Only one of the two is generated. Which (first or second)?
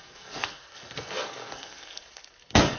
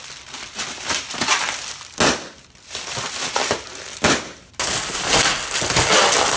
first